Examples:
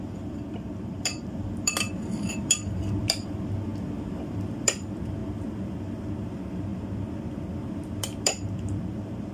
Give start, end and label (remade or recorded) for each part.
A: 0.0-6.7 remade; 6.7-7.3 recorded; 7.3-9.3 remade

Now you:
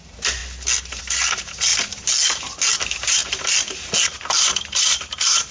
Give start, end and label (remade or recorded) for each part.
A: 0.0-0.4 remade; 0.4-1.0 recorded; 1.0-1.7 remade; 1.7-2.8 recorded; 2.8-3.2 remade; 3.2-4.6 recorded; 4.6-5.5 remade